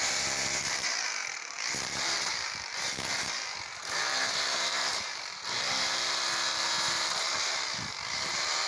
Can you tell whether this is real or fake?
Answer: fake